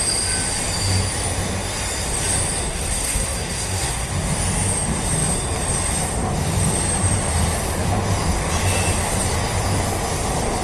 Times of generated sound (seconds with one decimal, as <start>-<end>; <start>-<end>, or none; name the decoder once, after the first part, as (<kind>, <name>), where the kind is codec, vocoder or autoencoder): 2.7-4.1 (codec, SNAC)